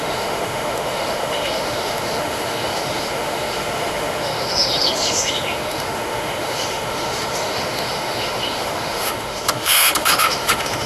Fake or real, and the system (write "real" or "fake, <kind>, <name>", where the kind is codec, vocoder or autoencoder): fake, autoencoder, DAC-VAE